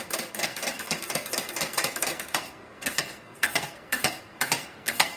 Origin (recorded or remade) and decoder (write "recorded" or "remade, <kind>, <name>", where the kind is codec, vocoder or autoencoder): remade, codec, SNAC